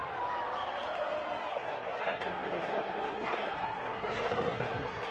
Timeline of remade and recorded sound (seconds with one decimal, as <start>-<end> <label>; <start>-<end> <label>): 0.0-1.5 recorded; 1.5-5.1 remade